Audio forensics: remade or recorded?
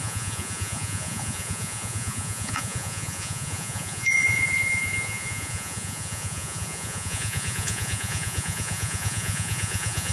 remade